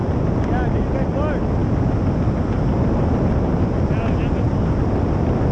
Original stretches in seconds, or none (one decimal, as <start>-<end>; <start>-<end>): 0.0-5.5